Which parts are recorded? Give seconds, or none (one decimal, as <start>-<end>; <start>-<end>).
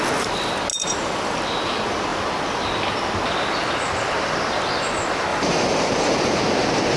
0.0-0.7; 1.4-5.3; 6.4-7.0